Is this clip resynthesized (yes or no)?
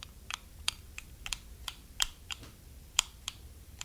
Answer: yes